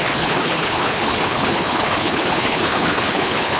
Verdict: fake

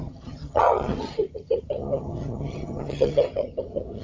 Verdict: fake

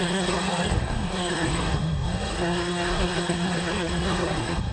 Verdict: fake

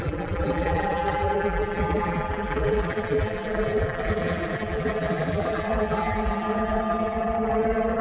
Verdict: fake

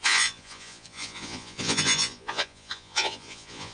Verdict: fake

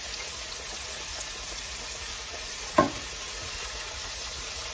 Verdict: fake